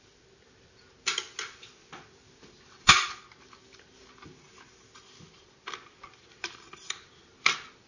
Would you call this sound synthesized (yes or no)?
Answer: no